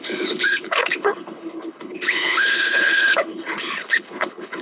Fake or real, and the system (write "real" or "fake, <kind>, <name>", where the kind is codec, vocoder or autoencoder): fake, codec, HILCodec